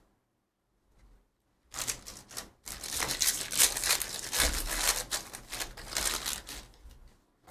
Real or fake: real